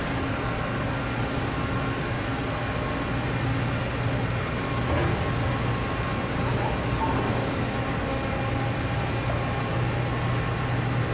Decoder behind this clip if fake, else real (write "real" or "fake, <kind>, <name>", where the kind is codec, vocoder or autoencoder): real